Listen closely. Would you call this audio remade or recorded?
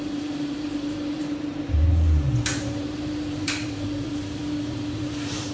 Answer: remade